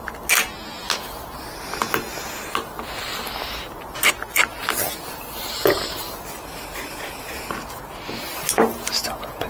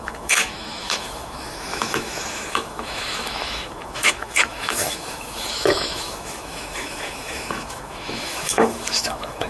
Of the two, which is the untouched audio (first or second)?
first